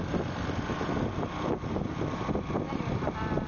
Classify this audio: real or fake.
real